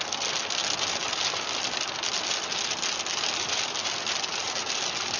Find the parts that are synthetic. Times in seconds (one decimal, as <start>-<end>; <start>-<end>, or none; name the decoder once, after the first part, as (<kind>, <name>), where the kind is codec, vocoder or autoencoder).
none